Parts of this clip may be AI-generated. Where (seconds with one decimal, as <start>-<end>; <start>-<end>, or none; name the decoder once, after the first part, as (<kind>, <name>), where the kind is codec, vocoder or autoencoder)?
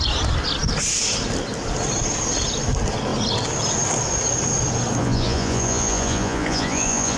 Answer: 5.0-7.2 (vocoder, Vocos)